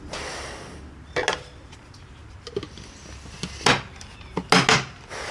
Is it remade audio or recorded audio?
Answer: recorded